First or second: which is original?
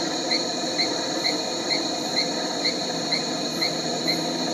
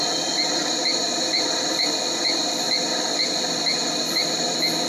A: second